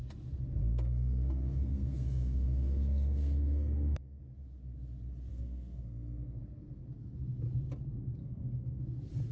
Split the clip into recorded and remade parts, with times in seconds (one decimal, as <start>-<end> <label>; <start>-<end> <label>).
0.0-0.6 recorded; 0.6-4.2 remade; 4.2-5.3 recorded; 5.3-6.4 remade; 6.4-8.2 recorded; 8.2-8.8 remade; 8.8-9.3 recorded

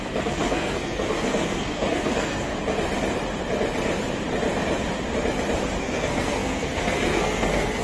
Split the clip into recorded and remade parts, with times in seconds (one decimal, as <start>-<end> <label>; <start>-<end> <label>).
0.0-2.5 remade; 2.5-5.8 recorded; 5.8-7.8 remade

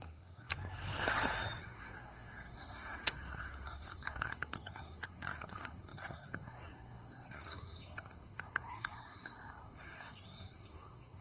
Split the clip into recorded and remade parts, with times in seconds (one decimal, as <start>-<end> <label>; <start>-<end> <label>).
0.0-0.5 remade; 0.5-1.6 recorded; 1.6-11.2 remade